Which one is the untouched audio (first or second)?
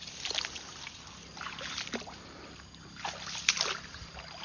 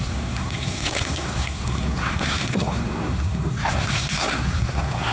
first